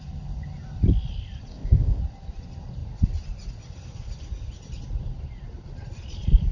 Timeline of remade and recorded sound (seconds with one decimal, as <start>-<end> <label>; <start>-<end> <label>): 0.0-1.5 recorded; 1.5-2.0 remade; 2.0-6.5 recorded

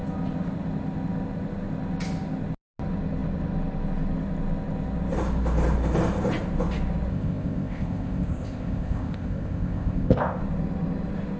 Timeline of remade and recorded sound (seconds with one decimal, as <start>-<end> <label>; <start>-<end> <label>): 0.0-7.1 recorded; 7.1-10.4 remade; 10.4-11.4 recorded